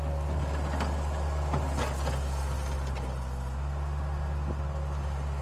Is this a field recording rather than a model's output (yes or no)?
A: yes